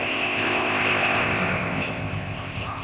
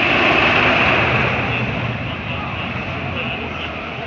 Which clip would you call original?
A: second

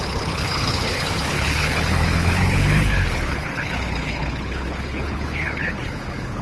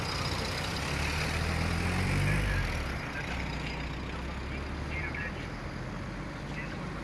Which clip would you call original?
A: second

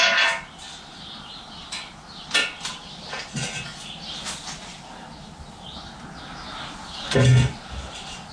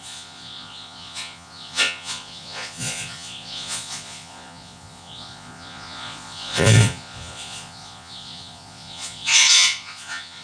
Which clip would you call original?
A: first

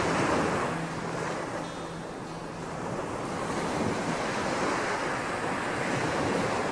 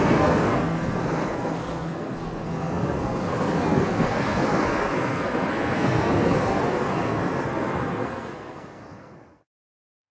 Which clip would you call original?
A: first